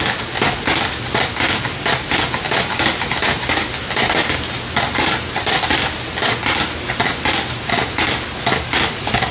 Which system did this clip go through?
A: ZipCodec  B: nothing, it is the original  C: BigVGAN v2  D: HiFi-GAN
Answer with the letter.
B